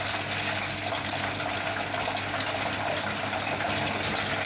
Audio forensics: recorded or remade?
recorded